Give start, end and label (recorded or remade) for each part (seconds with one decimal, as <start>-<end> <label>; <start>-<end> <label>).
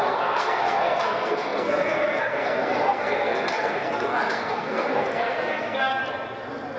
0.0-6.0 remade; 6.0-6.8 recorded